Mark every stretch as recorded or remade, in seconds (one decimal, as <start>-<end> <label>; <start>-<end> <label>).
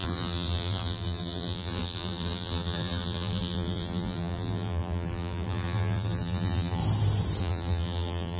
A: 0.0-6.8 remade; 6.8-7.4 recorded; 7.4-8.4 remade